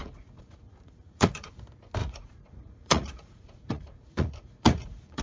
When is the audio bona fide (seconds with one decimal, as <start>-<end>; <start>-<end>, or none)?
1.5-2.0